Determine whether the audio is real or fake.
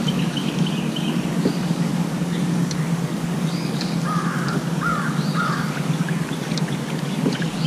fake